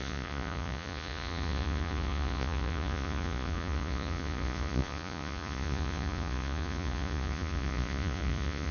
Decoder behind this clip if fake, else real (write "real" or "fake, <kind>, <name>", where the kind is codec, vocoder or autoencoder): fake, vocoder, Vocos